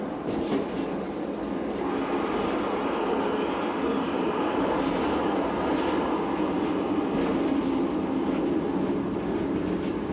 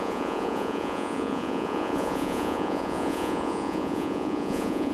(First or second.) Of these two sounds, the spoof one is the second